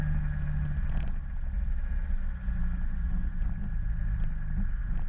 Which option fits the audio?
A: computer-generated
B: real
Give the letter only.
B